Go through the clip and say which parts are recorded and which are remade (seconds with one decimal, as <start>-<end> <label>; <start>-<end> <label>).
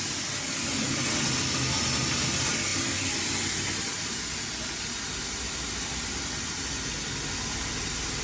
0.0-8.2 recorded